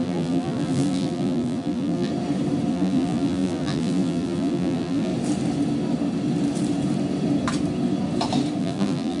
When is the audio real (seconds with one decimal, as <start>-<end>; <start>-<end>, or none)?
2.1-2.7; 5.1-8.6